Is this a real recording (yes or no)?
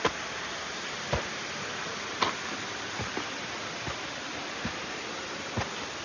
yes